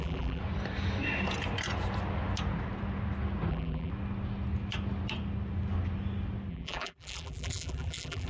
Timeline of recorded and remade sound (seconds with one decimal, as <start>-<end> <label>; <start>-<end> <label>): 0.0-0.4 remade; 0.4-3.5 recorded; 3.5-3.9 remade; 3.9-6.5 recorded; 6.5-8.3 remade